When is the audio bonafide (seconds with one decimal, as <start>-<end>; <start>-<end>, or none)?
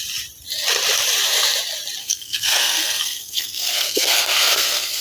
0.0-2.0